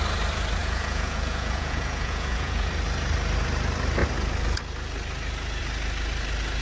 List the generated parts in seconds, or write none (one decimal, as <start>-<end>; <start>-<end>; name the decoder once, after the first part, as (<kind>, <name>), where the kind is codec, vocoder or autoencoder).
0.6-2.7 (vocoder, Vocos)